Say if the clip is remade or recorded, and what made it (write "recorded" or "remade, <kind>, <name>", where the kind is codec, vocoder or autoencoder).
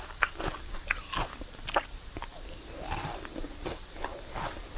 recorded